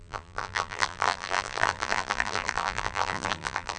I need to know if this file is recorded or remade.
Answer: remade